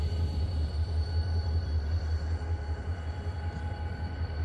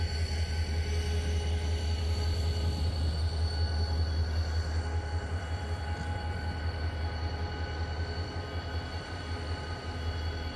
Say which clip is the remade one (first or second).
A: first